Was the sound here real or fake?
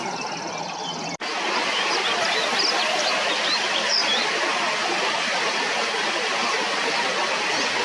real